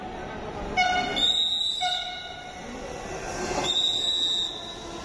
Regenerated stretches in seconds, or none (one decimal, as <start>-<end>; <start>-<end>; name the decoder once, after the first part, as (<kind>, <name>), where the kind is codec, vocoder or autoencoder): none